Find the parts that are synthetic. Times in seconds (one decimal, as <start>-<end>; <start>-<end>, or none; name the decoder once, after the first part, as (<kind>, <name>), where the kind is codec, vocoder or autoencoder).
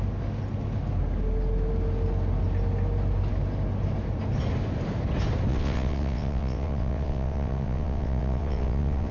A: 5.5-9.1 (vocoder, WaveNeXt)